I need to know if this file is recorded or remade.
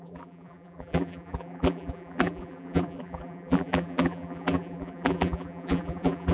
remade